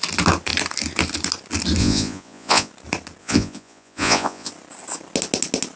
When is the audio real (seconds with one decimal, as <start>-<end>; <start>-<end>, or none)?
0.0-1.8; 2.7-3.2; 4.5-5.8